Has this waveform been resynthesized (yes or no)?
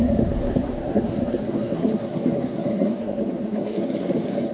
yes